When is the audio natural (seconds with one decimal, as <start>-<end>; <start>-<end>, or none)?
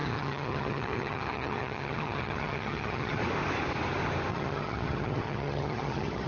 3.2-4.3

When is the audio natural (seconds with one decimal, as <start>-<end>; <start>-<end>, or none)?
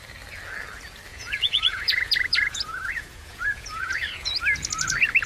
0.0-1.1; 4.3-5.3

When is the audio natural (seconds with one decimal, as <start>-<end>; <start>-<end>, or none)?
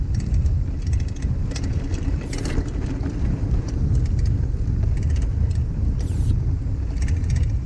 0.0-7.7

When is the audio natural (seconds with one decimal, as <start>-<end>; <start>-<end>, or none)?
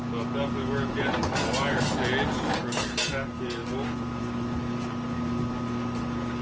0.0-6.4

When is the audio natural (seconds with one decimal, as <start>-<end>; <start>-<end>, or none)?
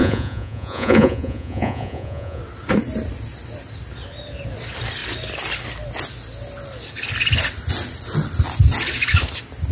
2.4-9.7